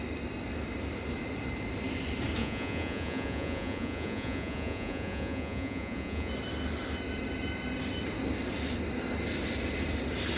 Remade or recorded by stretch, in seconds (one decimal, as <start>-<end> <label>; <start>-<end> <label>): 0.0-2.4 recorded; 2.4-6.3 remade; 6.3-10.4 recorded